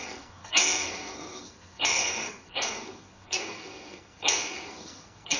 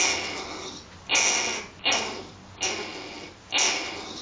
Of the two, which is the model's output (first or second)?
first